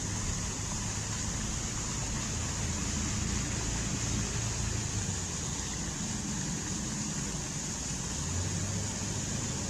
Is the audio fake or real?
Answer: real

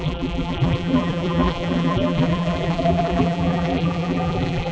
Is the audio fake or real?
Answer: fake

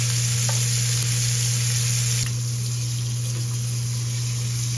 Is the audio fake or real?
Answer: real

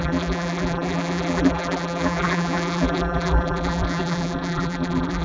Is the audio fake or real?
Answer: fake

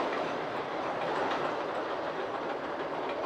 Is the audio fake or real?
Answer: fake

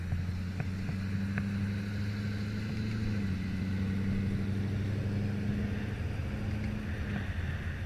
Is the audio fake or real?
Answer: real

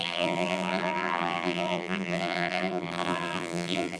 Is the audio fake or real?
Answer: fake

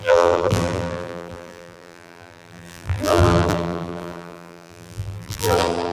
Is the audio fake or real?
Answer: fake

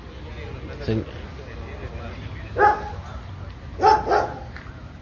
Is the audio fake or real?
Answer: real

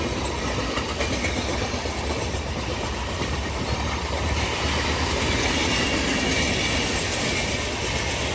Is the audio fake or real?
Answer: real